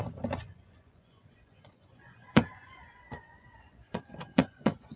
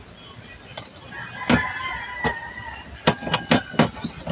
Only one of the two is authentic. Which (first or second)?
second